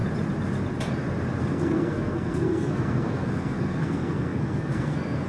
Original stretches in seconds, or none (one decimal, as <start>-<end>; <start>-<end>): 0.0-1.4

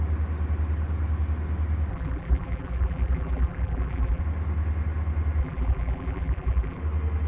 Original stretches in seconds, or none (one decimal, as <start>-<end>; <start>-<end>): 0.0-1.9; 4.2-5.4; 6.8-7.3

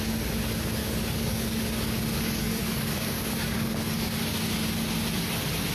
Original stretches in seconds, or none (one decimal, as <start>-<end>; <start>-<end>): 0.0-0.8; 4.2-5.7

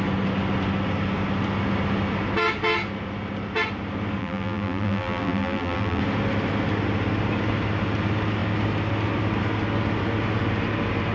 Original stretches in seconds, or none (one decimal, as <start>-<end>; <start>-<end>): 0.0-4.2; 6.0-11.1